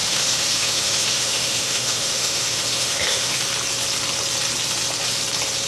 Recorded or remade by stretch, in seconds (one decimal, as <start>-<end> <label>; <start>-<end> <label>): 0.0-3.4 remade; 3.4-5.7 recorded